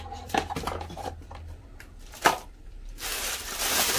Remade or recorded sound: remade